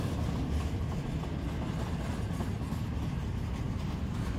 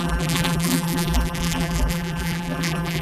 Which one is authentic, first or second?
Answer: first